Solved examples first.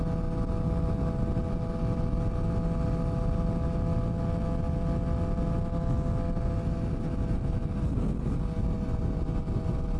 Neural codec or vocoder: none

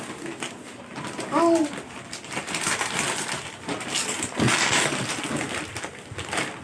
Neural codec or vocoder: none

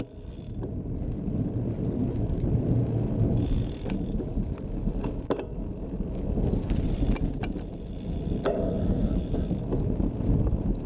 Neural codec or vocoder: none